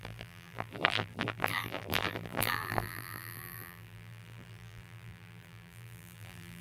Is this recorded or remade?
remade